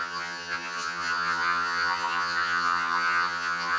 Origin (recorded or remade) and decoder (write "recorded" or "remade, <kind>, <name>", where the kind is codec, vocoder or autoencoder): remade, vocoder, HiFi-GAN